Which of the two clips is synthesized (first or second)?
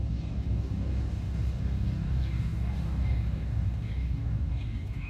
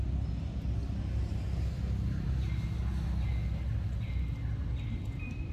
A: first